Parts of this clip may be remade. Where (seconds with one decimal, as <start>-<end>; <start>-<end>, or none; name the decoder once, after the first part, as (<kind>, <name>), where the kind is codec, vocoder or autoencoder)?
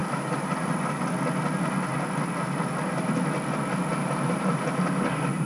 0.0-1.0 (vocoder, BigVGAN v2); 3.9-4.8